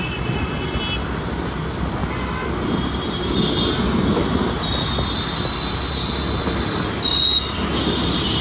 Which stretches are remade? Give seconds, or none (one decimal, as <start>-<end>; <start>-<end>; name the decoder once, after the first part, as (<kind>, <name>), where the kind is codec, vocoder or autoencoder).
none

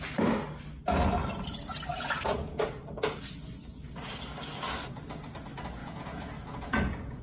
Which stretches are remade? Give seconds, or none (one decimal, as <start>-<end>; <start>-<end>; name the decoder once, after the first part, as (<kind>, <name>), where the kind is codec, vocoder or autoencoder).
1.9-2.7 (vocoder, Vocos); 5.8-7.2

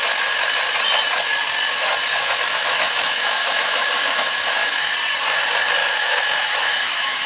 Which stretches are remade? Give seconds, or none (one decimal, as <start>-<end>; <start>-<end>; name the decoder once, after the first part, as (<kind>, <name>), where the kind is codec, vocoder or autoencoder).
2.1-4.9 (autoencoder, DAC-VAE); 5.8-7.3

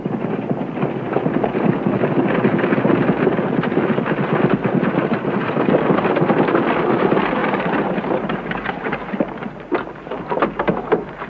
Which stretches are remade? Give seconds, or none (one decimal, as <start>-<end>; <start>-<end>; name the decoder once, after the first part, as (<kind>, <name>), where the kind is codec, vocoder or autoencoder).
5.1-6.0 (vocoder, BigVGAN v2); 7.4-9.2

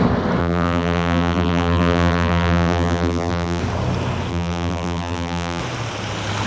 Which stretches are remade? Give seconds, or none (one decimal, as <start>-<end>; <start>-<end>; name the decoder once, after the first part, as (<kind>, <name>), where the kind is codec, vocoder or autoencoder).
0.4-3.6 (vocoder, BigVGAN v2); 4.3-5.6

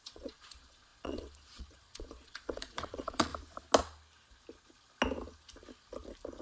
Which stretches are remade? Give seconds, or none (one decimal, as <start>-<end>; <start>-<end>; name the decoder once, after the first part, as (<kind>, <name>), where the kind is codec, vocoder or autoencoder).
0.0-3.3 (vocoder, Vocos)

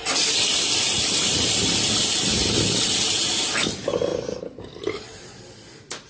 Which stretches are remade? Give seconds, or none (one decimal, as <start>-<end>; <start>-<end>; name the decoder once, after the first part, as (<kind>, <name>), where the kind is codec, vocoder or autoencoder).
0.0-1.3 (vocoder, BigVGAN v2); 4.1-5.2

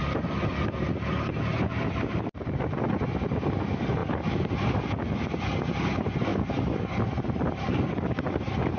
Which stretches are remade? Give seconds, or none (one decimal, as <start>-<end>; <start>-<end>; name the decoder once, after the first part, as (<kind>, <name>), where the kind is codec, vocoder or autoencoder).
none